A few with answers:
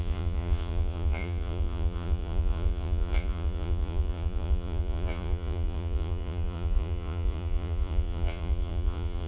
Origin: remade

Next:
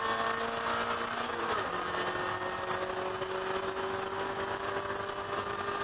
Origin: recorded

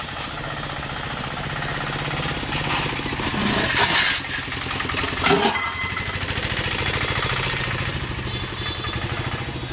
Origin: recorded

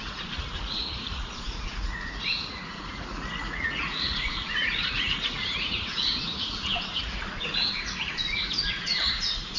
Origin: remade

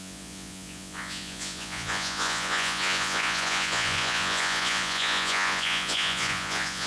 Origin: remade